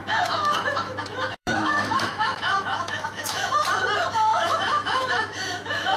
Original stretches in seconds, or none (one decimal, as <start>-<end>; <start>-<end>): 3.6-4.3